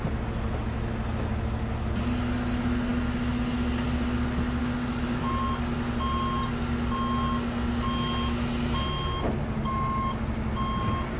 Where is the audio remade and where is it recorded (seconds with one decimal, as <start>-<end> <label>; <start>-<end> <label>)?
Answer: 0.0-4.6 recorded; 4.6-5.2 remade; 5.2-11.2 recorded